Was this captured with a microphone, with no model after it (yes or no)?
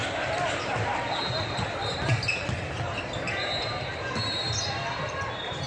yes